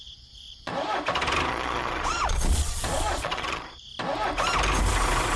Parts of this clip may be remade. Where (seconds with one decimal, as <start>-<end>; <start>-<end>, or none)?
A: 0.0-0.7; 1.5-3.9